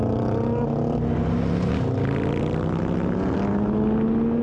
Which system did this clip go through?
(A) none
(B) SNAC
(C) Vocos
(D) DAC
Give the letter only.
A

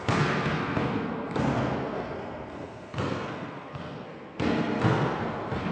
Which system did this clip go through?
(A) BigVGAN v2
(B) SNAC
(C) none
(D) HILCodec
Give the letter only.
B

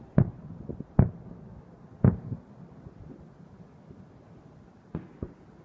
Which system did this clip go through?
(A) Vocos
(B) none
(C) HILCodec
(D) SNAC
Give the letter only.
B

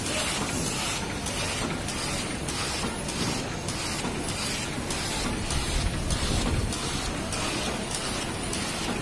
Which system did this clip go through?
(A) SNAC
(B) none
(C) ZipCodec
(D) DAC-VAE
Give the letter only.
B